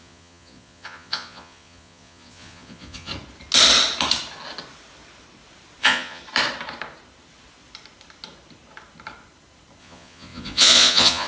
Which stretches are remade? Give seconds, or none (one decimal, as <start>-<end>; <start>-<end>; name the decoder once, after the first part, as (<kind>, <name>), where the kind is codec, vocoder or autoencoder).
0.0-3.1 (vocoder, Vocos); 5.8-6.2; 9.8-11.3